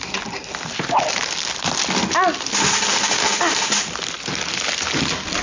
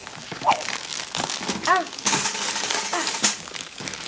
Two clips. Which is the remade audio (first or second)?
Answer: second